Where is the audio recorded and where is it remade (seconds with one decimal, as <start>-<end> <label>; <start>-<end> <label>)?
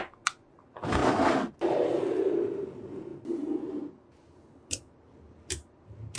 0.0-6.2 recorded